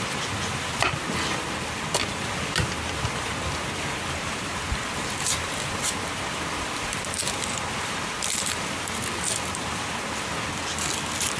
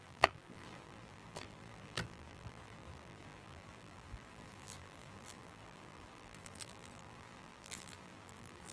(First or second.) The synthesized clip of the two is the second